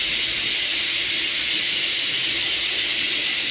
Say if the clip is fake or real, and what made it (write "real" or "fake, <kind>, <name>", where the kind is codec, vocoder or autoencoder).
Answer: real